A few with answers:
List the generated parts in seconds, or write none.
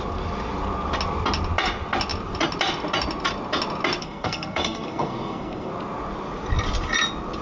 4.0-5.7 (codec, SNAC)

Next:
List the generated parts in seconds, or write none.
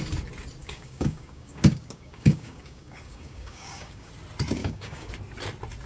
0.6-4.1 (codec, DAC); 4.6-5.1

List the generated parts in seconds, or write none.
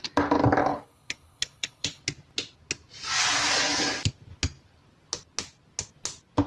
0.6-2.0 (codec, HILCodec)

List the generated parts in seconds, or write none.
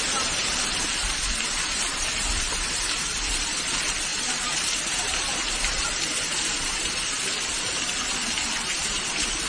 0.0-9.5 (vocoder, BigVGAN v2)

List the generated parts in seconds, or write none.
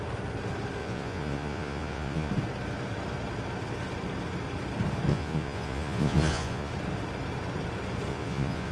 0.8-2.3 (vocoder, Vocos); 5.1-6.7; 8.1-8.7